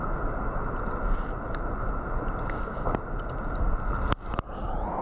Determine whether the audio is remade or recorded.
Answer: recorded